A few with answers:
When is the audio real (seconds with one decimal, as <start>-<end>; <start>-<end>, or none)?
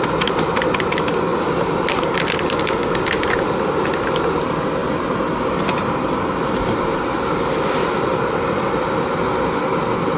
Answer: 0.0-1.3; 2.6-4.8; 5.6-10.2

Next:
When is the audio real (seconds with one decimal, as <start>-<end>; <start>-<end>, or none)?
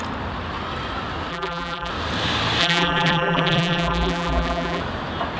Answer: 0.0-1.3; 1.9-2.6; 4.8-5.4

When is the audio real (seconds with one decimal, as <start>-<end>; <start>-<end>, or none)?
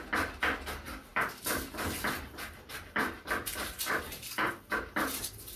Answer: 0.0-1.1; 4.5-5.6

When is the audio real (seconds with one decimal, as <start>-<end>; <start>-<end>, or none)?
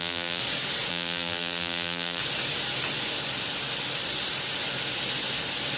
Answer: 0.4-0.9; 2.2-5.8